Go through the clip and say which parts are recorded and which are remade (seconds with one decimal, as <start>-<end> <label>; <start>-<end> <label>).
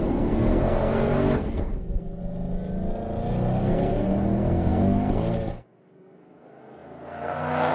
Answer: 0.0-2.2 remade; 2.2-3.6 recorded; 3.6-7.7 remade